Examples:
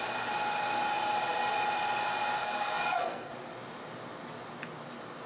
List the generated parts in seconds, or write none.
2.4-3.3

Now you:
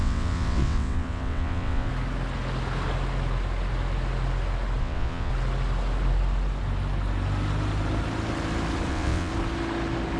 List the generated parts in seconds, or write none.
0.0-1.9; 4.8-5.3; 8.9-9.3

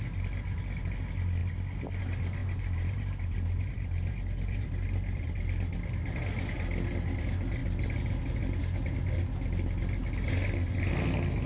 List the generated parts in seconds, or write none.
2.4-5.3